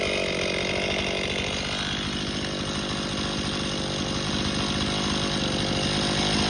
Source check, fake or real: real